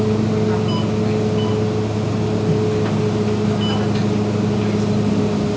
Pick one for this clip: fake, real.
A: real